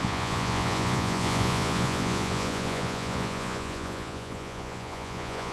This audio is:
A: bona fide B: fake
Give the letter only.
B